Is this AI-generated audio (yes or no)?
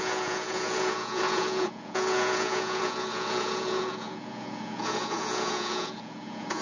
yes